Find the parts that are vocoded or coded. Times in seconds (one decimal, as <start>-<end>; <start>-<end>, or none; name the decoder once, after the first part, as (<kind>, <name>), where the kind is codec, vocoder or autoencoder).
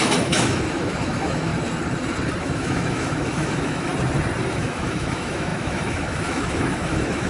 0.0-1.5 (autoencoder, DAC-VAE); 2.4-3.9; 4.5-7.3